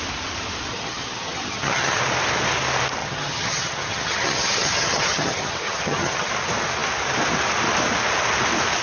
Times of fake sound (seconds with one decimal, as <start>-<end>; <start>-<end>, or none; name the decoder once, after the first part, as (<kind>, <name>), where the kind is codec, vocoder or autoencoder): 0.7-2.0 (vocoder, HiFi-GAN); 3.0-6.3